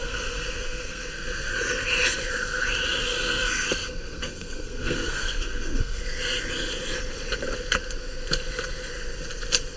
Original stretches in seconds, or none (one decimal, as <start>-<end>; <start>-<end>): 1.5-3.0; 6.0-9.8

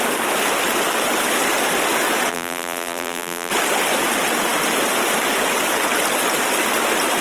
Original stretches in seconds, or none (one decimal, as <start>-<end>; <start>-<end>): 0.0-2.3; 3.5-7.2

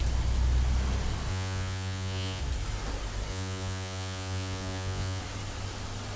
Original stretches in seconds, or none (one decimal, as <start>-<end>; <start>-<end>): 0.0-1.3; 2.4-3.3; 5.2-6.2

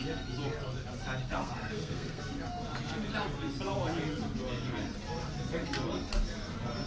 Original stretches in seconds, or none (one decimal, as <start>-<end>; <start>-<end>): 0.0-1.2; 2.2-6.9

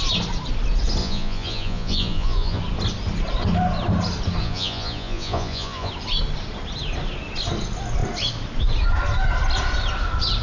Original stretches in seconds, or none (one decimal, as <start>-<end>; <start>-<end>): 0.0-1.0; 2.6-4.4; 5.9-10.4